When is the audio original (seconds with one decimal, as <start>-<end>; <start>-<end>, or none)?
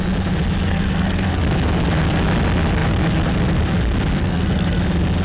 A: 0.0-0.7; 1.4-4.2; 4.8-5.2